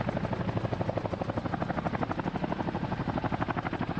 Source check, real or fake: real